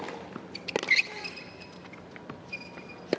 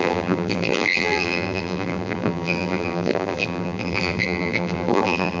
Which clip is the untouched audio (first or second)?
first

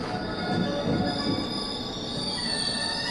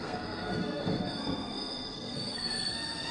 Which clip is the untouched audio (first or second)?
first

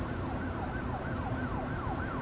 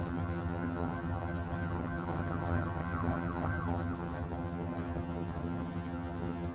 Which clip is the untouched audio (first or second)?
first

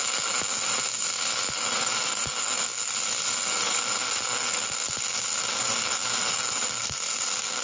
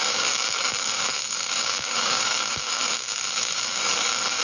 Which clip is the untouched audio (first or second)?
first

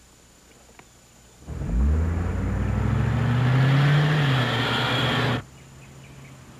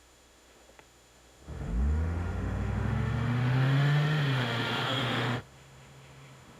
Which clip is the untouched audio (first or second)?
first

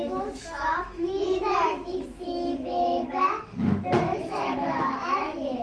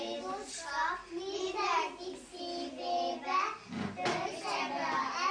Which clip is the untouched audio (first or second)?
second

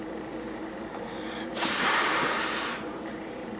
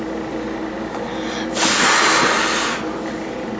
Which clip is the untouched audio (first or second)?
second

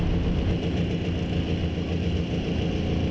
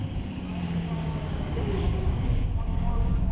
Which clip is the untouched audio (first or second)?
first